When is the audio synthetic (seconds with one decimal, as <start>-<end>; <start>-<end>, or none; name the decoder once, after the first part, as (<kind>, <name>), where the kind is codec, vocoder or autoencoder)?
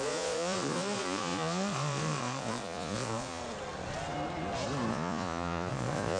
0.0-3.4 (vocoder, Vocos); 4.9-6.2